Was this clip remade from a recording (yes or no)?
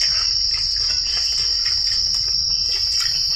no